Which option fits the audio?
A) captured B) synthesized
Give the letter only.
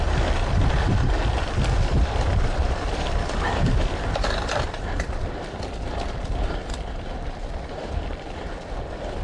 B